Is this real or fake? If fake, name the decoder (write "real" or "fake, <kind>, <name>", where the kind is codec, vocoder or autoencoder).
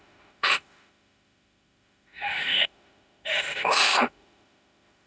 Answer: fake, autoencoder, DAC-VAE